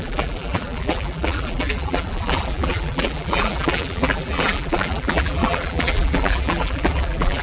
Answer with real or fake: fake